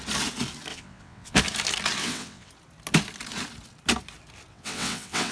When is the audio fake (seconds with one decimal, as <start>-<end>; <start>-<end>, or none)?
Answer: 0.7-1.4; 2.0-2.5; 4.5-5.3